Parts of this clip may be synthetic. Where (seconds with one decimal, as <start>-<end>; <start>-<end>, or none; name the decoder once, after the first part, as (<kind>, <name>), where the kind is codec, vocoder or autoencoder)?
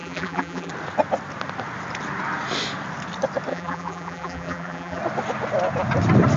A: 0.0-0.7 (vocoder, BigVGAN v2); 3.5-5.0